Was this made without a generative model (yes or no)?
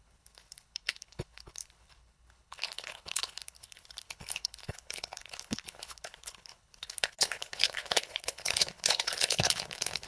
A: no